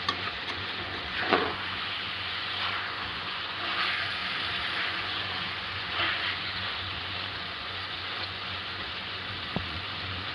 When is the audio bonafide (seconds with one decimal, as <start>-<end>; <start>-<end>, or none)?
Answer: 4.2-4.8